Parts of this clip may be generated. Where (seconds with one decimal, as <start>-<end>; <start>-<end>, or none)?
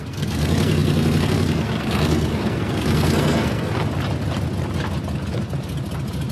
0.0-3.8